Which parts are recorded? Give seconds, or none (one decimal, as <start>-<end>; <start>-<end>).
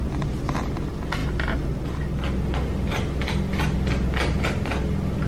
0.0-5.3